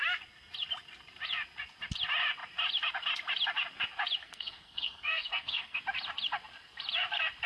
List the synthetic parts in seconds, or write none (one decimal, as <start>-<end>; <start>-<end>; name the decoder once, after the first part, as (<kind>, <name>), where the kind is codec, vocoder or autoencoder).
4.2-5.8 (codec, SNAC)